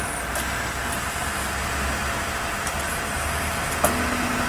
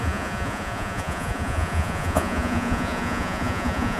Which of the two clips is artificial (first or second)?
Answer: second